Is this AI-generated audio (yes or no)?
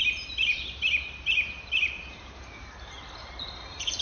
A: yes